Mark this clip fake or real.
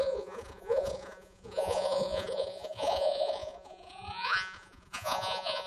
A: fake